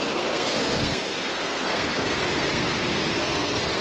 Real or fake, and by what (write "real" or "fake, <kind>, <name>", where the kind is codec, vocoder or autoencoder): fake, codec, SNAC